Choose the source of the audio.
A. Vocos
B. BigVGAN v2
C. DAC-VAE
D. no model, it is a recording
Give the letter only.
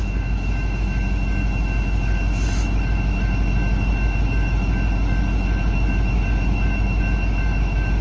C